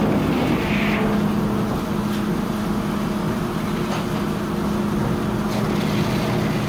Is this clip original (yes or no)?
yes